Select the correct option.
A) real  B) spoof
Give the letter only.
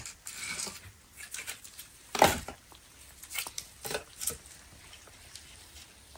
A